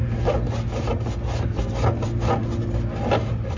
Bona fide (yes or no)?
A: yes